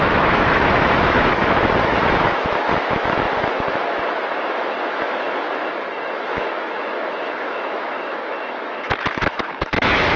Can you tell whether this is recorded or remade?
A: remade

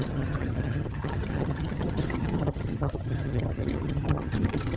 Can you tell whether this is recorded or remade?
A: remade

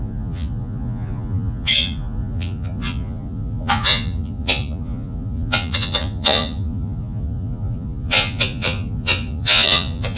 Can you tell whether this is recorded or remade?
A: remade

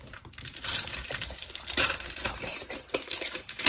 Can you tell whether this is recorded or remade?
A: remade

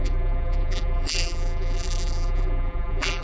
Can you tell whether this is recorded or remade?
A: remade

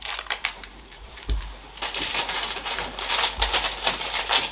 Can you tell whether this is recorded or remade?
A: remade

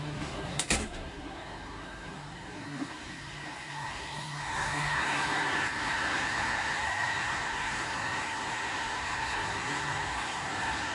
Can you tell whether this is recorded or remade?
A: remade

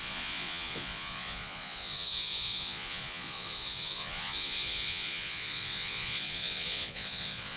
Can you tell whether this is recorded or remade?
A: remade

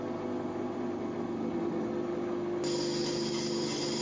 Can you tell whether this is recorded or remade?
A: recorded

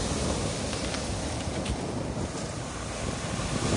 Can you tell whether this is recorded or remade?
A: recorded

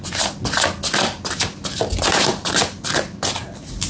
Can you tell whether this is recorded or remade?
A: recorded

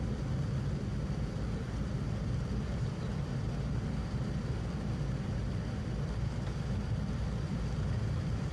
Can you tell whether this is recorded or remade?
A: remade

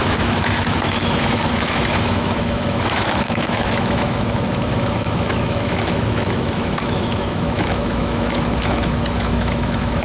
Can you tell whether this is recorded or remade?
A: remade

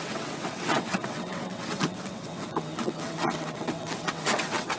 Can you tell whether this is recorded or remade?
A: remade